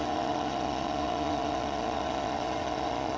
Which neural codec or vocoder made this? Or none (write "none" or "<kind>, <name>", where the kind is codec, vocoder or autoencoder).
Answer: vocoder, Vocos